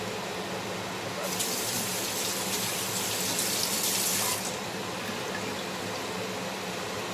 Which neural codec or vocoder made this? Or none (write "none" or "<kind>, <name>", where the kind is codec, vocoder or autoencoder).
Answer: none